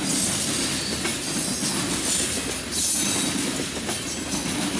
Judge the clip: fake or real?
real